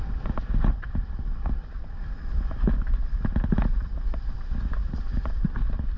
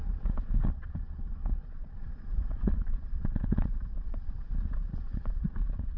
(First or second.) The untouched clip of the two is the first